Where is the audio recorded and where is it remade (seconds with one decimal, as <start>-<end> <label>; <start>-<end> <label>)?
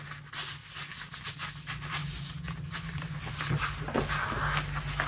0.0-5.1 recorded